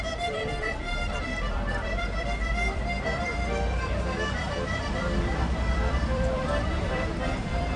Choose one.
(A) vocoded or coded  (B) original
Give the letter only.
A